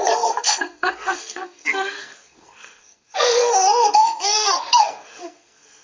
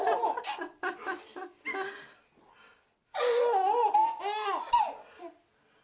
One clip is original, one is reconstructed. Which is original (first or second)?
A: second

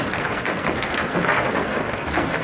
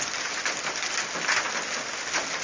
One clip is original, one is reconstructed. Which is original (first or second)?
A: second